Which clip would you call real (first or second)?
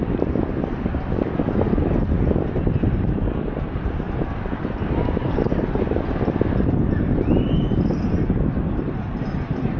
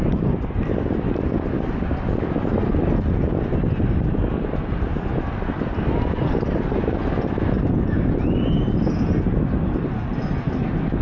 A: second